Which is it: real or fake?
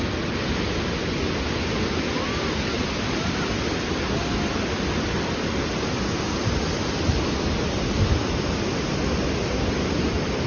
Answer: real